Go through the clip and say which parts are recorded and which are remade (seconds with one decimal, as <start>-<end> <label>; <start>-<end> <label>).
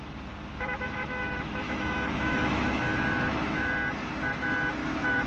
0.0-0.5 recorded; 0.5-3.7 remade; 3.7-4.8 recorded; 4.8-5.3 remade